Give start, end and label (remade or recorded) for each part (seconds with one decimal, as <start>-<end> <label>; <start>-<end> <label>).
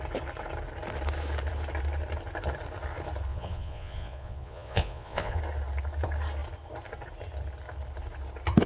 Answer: 0.0-3.3 recorded; 3.3-5.4 remade; 5.4-8.7 recorded